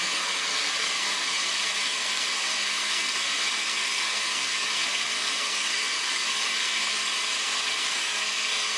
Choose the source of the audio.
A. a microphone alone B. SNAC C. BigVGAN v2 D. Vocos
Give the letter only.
B